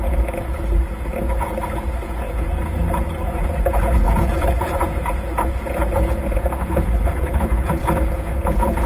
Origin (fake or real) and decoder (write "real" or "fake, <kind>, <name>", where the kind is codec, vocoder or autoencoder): fake, vocoder, Vocos